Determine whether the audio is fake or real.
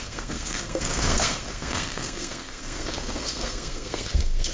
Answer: fake